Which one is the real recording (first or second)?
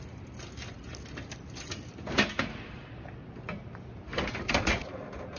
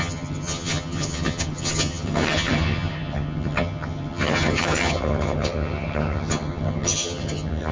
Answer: first